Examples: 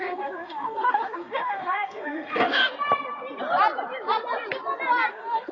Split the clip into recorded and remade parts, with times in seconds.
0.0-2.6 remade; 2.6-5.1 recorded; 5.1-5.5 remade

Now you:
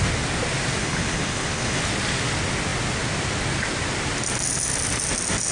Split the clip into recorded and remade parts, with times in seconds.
0.0-0.8 recorded; 0.8-1.8 remade; 1.8-5.5 recorded

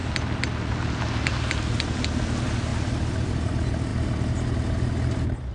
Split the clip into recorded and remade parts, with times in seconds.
0.0-5.5 recorded

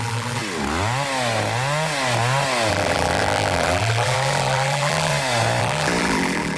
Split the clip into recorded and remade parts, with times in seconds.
0.0-0.4 remade; 0.4-2.7 recorded; 2.7-5.1 remade; 5.1-5.6 recorded; 5.6-6.6 remade

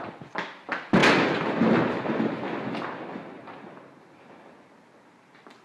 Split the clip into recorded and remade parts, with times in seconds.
0.0-5.6 recorded

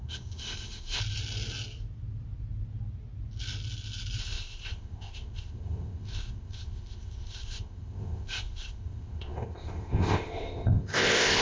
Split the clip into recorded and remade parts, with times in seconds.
0.0-1.0 remade; 1.0-4.2 recorded; 4.2-11.4 remade